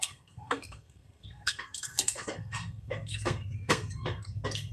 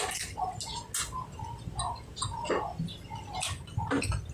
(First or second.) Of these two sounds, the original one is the second